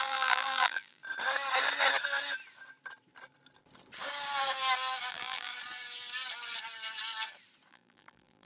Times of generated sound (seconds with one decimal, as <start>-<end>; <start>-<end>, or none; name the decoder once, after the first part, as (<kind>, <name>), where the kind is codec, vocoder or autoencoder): 0.0-1.0 (vocoder, BigVGAN v2); 5.1-5.5; 7.7-8.4